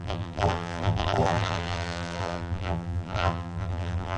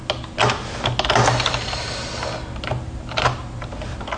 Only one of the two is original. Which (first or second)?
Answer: second